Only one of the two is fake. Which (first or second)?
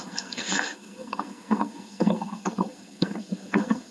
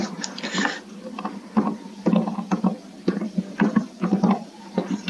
first